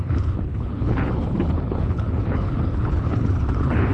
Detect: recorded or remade remade